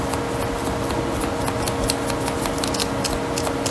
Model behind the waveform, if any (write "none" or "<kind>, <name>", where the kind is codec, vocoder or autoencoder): none